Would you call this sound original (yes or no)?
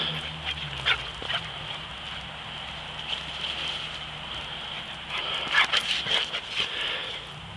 yes